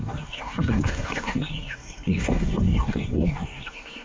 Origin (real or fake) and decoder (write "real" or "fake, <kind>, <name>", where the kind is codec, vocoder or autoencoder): fake, codec, SNAC